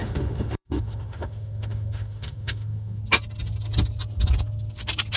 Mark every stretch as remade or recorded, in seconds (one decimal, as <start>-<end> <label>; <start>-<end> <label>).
0.0-3.0 remade; 3.0-5.2 recorded